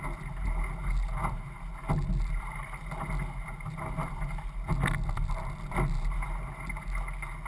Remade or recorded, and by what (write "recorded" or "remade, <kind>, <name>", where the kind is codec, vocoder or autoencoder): recorded